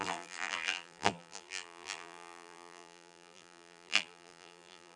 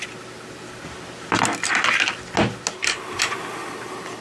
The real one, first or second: second